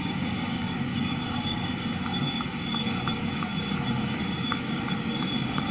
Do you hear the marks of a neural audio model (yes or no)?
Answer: yes